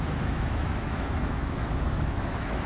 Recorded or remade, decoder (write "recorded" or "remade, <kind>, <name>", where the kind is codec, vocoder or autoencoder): remade, autoencoder, DAC-VAE